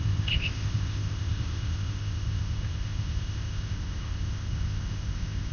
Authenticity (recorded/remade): remade